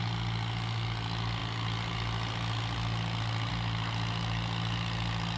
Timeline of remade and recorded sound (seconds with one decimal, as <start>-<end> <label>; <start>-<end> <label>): 0.0-5.4 recorded